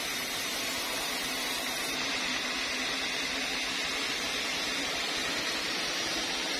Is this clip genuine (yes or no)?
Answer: yes